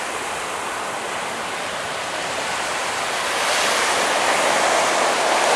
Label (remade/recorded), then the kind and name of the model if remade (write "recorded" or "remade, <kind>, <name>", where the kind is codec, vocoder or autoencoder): recorded